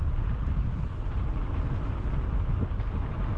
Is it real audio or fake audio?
real